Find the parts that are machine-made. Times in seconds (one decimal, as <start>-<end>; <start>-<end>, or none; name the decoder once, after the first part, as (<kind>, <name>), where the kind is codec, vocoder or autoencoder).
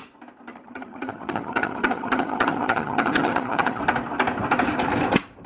0.5-3.8 (vocoder, HiFi-GAN)